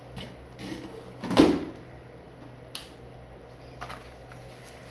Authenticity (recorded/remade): recorded